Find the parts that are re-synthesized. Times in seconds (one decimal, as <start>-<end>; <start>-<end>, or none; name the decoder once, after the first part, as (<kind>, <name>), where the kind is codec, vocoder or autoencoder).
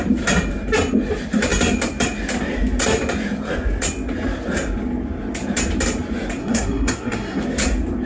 6.4-7.4 (codec, SNAC)